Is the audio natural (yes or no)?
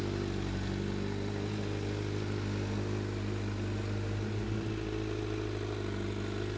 yes